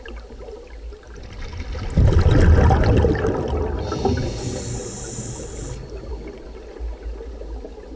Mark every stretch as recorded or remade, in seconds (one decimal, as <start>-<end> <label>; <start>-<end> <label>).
0.0-8.0 recorded